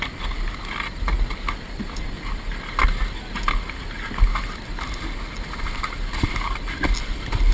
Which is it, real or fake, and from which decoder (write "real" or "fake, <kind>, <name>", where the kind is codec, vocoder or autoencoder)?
real